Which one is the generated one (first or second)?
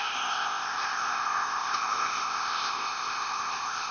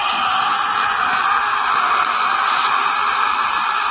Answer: first